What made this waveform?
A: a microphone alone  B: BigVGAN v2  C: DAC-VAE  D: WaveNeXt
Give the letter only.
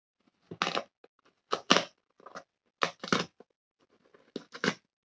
A